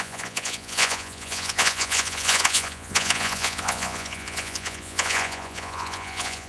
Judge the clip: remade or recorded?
remade